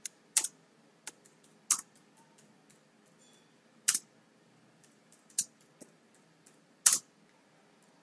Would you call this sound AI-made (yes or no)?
no